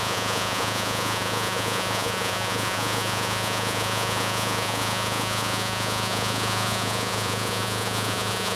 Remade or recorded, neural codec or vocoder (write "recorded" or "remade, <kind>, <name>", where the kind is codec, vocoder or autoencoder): remade, vocoder, Vocos